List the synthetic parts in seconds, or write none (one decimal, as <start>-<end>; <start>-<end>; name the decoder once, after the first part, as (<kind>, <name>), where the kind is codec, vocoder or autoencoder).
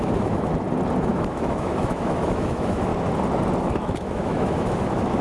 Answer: 0.0-0.5 (autoencoder, DAC-VAE); 1.0-2.9; 3.6-5.2